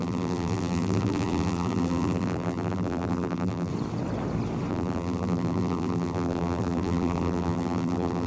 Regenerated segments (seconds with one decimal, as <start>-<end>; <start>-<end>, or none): 0.0-3.7; 4.7-8.3